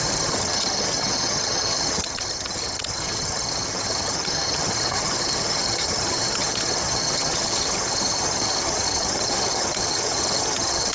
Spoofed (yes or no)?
yes